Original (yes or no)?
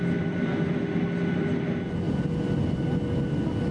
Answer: yes